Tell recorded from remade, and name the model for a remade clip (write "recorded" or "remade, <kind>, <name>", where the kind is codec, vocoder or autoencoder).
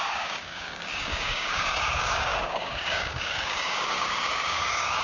remade, codec, DAC